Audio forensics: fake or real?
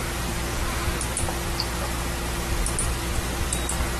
real